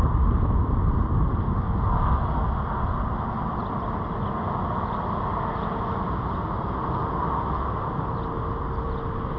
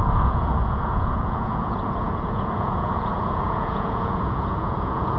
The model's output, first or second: second